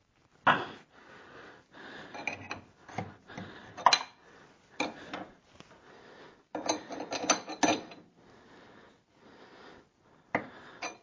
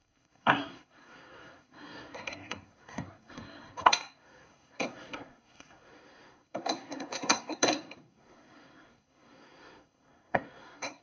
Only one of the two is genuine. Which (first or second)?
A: first